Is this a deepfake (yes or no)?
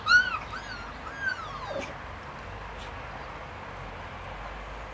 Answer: no